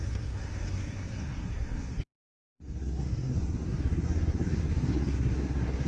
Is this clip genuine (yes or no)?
no